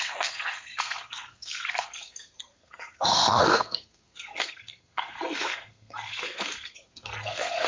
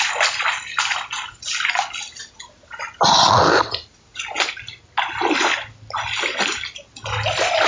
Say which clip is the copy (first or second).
first